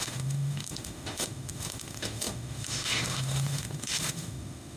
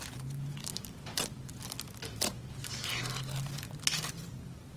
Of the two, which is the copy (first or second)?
first